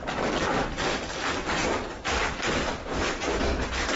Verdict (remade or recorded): remade